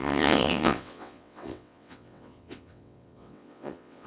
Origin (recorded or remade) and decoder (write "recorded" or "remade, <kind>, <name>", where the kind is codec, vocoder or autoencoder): remade, vocoder, WaveNeXt